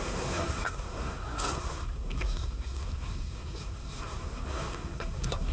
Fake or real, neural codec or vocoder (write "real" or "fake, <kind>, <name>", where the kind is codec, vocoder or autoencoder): fake, codec, SNAC